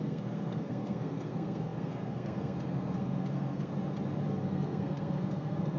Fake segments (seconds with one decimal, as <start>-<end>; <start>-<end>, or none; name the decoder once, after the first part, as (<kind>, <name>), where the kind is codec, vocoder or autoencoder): 0.0-3.7 (codec, SNAC); 4.3-5.8